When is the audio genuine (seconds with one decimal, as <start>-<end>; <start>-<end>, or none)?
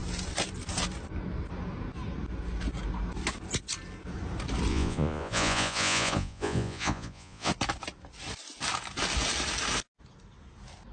0.0-4.7; 7.5-10.9